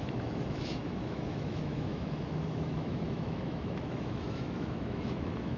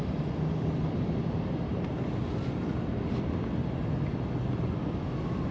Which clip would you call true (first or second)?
second